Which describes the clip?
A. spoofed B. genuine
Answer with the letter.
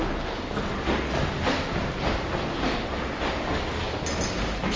B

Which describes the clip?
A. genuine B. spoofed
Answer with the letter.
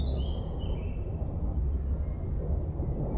A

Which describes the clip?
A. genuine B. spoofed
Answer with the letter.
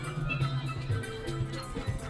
A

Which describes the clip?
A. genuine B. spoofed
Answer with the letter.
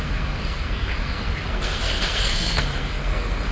B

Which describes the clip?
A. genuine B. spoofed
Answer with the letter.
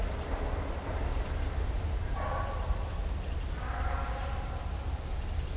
A